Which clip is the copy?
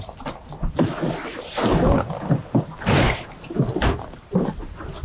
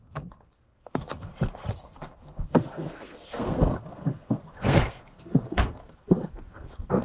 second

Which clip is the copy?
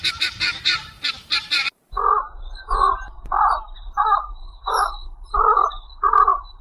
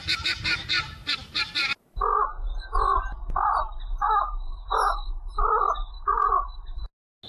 first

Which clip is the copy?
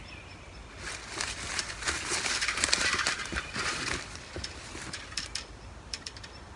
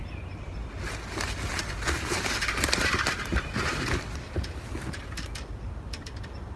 first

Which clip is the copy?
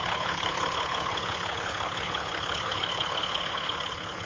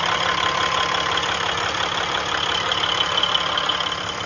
first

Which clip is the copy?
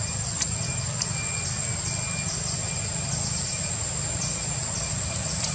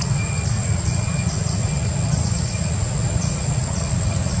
second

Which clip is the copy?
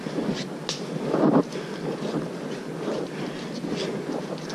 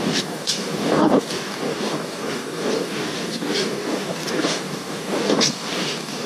second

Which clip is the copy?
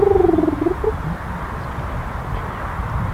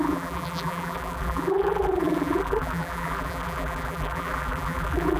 second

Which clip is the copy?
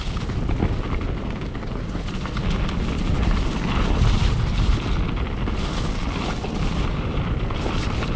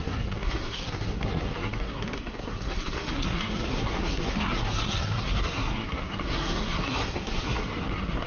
second